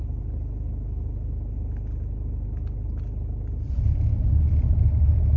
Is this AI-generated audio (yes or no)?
no